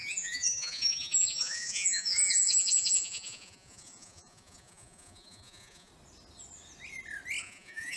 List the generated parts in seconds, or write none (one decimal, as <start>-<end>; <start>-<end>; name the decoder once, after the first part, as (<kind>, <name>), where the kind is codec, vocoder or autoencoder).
0.0-5.9 (vocoder, Vocos); 7.4-8.0